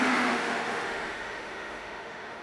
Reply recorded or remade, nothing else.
remade